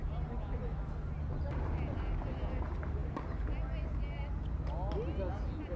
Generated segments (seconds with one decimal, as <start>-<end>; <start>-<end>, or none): none